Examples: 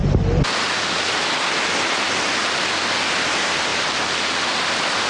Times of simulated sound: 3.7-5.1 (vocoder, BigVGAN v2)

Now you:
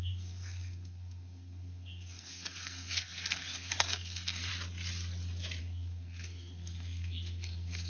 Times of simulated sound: 0.0-4.5 (codec, SNAC); 5.6-7.9

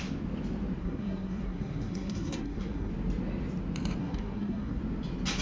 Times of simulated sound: 0.8-2.9 (codec, SNAC); 4.0-4.8

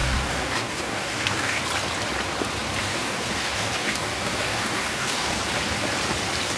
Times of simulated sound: 0.0-1.6 (codec, DAC); 2.8-5.4

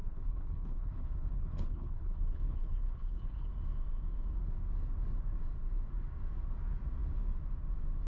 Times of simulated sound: 0.0-3.5 (codec, HILCodec)

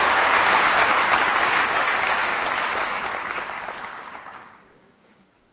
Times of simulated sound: 0.0-0.9 (codec, DAC); 1.4-2.3; 2.8-3.2; 3.9-5.5

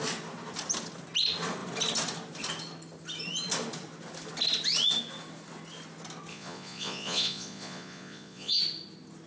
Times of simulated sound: 6.3-8.6 (vocoder, Vocos)

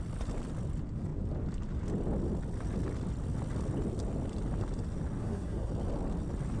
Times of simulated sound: 5.2-5.7 (codec, SNAC)